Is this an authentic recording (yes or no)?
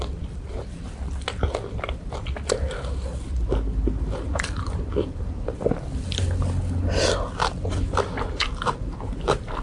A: no